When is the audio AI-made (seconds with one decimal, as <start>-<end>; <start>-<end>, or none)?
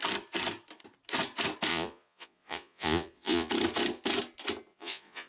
1.7-3.5; 4.7-5.3